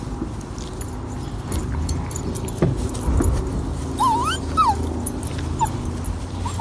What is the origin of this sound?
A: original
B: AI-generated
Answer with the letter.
A